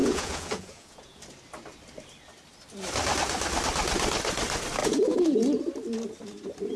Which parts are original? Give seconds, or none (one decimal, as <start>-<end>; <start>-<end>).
1.2-4.8; 5.4-6.8